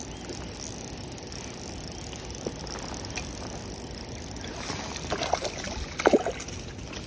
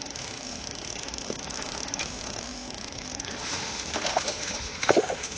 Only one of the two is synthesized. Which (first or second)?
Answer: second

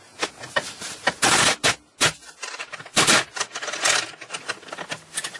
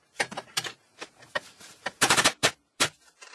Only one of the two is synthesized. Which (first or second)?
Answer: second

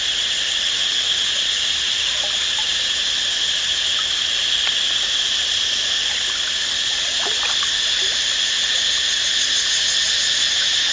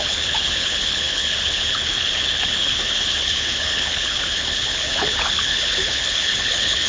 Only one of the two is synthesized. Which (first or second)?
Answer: second